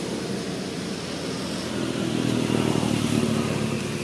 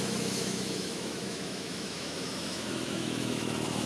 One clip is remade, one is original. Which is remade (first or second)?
second